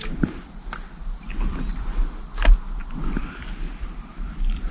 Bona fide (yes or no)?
yes